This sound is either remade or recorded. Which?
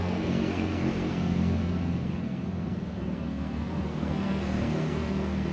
remade